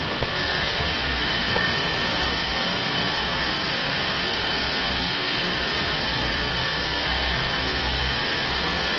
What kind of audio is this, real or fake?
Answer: fake